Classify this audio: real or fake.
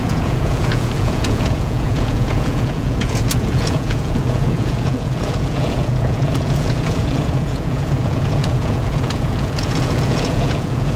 fake